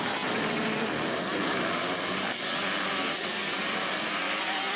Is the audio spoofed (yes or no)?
yes